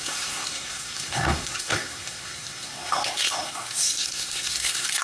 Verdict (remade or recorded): remade